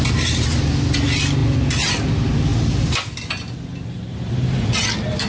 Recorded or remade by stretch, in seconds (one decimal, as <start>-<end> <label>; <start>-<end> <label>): 0.0-5.3 recorded